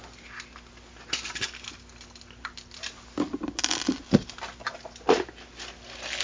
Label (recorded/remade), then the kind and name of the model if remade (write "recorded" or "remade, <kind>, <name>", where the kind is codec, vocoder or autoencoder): recorded